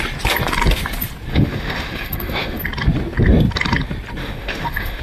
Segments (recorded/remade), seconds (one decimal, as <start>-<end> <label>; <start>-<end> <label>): 0.0-1.3 recorded; 1.3-2.6 remade; 2.6-4.2 recorded; 4.2-5.0 remade